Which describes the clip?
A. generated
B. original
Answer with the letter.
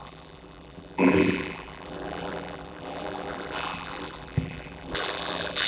A